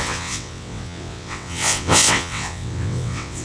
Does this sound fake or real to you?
fake